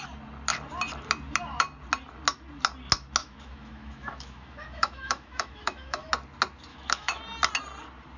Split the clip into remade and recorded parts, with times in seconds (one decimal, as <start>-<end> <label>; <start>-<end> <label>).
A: 0.0-3.2 recorded; 3.2-6.1 remade; 6.1-6.7 recorded; 6.7-7.2 remade; 7.2-8.2 recorded